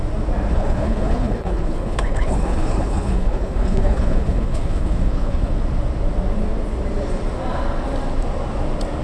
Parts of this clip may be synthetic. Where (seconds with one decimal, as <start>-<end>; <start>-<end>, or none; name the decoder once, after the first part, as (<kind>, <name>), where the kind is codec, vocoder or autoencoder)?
0.5-5.5 (codec, HILCodec)